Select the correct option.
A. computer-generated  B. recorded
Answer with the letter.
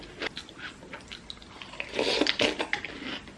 B